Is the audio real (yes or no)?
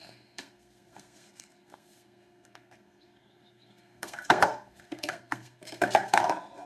no